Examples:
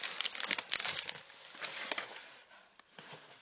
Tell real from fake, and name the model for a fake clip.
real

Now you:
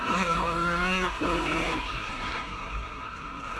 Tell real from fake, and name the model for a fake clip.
fake, codec, SNAC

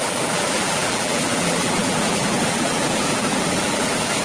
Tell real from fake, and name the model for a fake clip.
fake, vocoder, BigVGAN v2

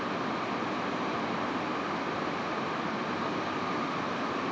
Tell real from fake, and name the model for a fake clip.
real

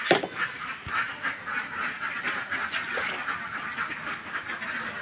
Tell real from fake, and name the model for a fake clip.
real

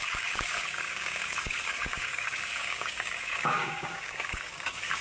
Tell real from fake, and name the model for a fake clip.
fake, codec, DAC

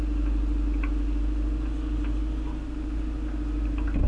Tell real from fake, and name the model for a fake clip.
real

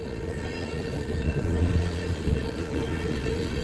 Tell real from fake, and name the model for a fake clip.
fake, vocoder, Vocos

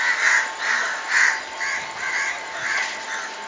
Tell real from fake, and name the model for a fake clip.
real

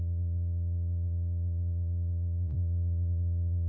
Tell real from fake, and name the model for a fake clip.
fake, vocoder, Vocos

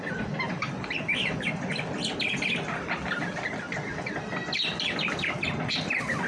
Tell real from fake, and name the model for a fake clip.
real